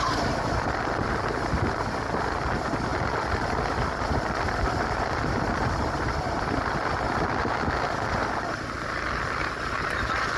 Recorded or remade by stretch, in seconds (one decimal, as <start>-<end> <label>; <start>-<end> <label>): 0.0-10.4 recorded